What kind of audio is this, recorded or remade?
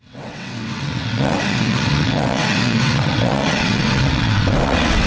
remade